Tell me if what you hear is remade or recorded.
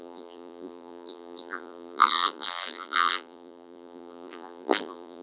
remade